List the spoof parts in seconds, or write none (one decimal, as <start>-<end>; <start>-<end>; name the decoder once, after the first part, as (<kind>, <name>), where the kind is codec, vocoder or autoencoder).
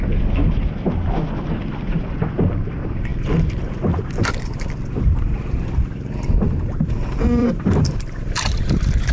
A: 3.1-6.9 (vocoder, BigVGAN v2); 7.4-8.7